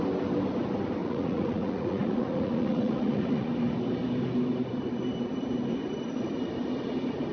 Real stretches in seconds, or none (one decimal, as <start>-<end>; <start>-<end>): 0.0-1.0; 3.5-7.3